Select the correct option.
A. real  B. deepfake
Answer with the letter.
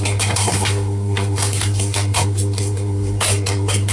B